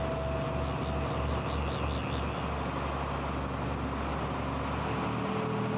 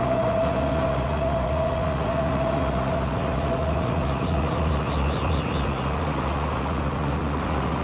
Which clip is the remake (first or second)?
second